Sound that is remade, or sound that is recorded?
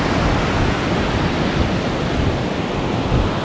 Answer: recorded